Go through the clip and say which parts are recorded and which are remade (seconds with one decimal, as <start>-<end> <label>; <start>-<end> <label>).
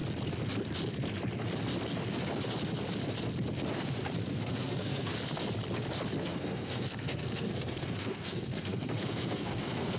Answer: 0.0-4.3 recorded; 4.3-5.1 remade; 5.1-6.2 recorded; 6.2-10.0 remade